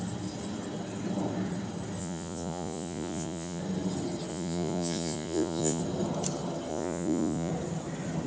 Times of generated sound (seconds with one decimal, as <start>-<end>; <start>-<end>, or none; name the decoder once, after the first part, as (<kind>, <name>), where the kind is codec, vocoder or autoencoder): 2.0-3.6 (vocoder, Vocos); 4.3-5.8; 6.7-7.5